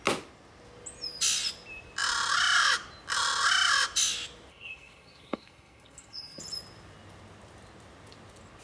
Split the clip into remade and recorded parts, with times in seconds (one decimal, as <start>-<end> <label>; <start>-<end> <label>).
0.0-4.5 recorded; 4.5-6.4 remade; 6.4-8.6 recorded